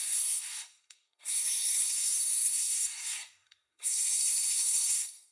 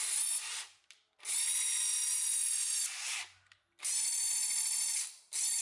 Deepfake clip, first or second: first